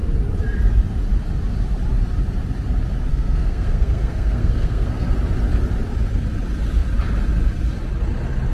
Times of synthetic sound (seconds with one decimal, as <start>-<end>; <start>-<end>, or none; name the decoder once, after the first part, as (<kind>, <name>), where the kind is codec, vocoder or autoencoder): 3.1-5.1 (codec, SNAC)